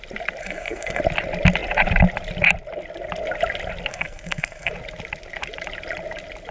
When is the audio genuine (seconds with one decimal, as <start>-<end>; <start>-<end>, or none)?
0.0-0.4; 1.0-3.9; 4.7-6.5